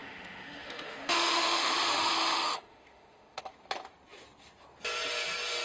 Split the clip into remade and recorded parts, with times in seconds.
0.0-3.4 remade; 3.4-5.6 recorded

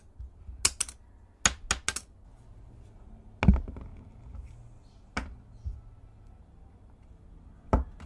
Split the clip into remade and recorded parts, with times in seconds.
0.0-8.1 recorded

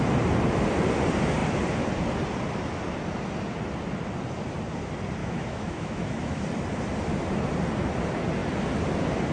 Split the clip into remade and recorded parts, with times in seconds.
0.0-5.2 recorded; 5.2-6.4 remade; 6.4-9.3 recorded